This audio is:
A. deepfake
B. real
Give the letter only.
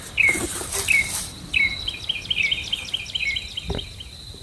B